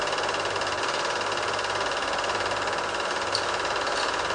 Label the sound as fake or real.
real